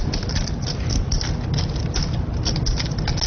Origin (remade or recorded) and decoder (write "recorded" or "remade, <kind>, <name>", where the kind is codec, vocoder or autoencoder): recorded